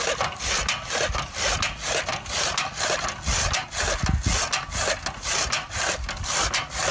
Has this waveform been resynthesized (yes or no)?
no